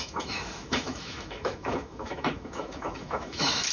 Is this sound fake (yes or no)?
yes